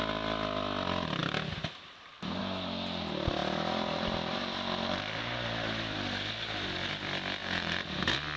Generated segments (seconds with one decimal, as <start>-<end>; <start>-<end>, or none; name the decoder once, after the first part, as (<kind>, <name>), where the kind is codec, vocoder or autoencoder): 7.4-8.0 (vocoder, Vocos)